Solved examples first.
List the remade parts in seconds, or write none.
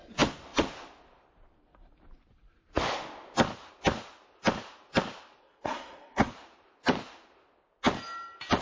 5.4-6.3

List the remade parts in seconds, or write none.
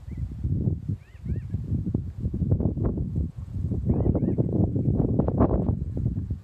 1.5-6.4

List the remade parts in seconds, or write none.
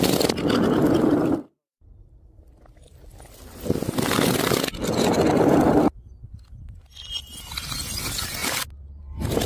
0.0-3.1; 4.4-8.4; 9.0-9.5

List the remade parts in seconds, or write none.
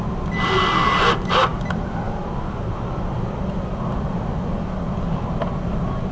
none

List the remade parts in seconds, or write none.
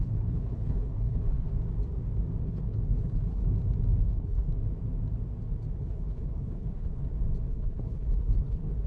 0.0-1.5; 2.4-3.4; 4.0-4.5; 5.8-7.0; 7.5-8.9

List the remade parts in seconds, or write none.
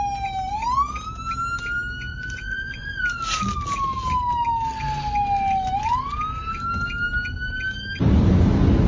2.1-3.0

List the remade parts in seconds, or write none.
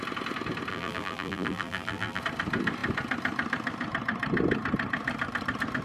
0.7-2.2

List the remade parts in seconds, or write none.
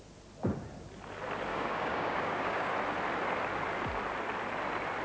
1.5-2.7